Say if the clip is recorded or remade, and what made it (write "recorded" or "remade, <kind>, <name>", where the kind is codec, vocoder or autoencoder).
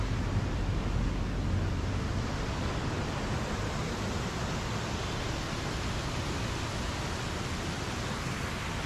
recorded